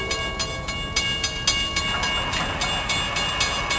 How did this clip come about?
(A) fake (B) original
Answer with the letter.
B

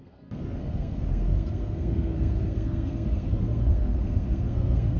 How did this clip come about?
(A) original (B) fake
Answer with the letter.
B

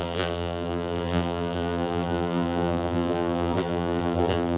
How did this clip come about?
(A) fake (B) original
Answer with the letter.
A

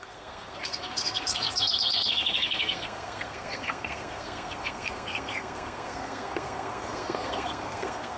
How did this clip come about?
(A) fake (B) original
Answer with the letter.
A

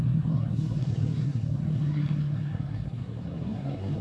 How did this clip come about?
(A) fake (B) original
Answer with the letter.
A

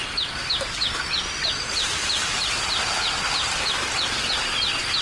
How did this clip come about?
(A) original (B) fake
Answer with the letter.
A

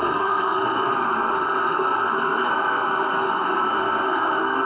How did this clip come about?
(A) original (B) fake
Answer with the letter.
B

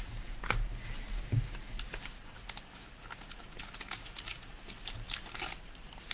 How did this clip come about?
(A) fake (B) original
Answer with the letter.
B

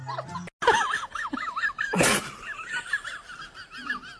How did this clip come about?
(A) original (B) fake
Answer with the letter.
A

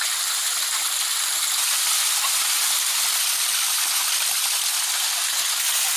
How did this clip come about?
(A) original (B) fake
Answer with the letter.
A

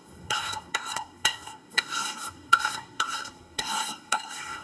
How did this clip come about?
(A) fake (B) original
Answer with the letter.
A